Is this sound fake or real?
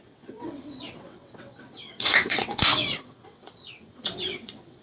fake